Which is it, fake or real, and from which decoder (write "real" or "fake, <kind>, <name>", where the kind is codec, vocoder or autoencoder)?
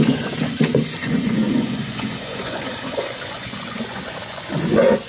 fake, vocoder, Vocos